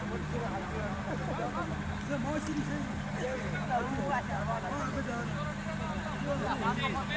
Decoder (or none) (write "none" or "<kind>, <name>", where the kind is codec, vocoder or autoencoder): none